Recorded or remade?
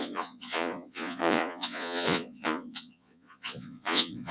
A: remade